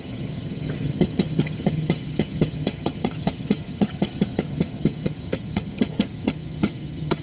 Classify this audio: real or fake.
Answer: fake